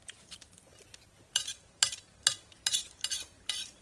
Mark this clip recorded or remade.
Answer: remade